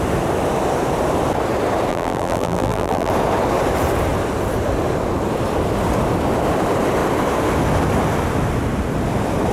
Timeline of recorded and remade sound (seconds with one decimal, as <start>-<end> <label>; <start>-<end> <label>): 0.0-1.9 recorded; 1.9-3.1 remade; 3.1-9.5 recorded